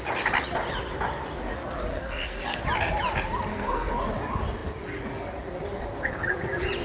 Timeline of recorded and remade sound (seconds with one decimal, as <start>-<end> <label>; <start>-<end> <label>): 0.0-1.9 recorded; 1.9-2.6 remade; 2.6-3.5 recorded; 3.5-4.0 remade; 4.0-6.8 recorded

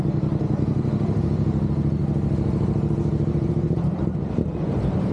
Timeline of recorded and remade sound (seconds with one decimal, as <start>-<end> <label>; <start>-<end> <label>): 0.0-2.0 recorded; 2.0-5.1 remade